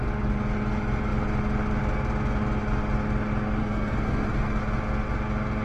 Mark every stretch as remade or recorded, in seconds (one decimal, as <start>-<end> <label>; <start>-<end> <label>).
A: 0.0-3.6 recorded; 3.6-4.6 remade; 4.6-5.6 recorded